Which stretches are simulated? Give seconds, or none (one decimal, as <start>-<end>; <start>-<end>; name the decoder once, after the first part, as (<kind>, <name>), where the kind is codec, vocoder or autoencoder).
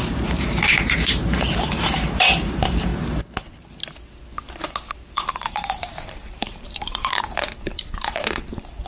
0.0-2.9 (vocoder, BigVGAN v2); 4.9-8.9